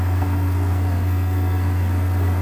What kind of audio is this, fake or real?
fake